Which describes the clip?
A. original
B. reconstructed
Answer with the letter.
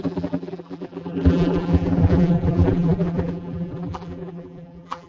B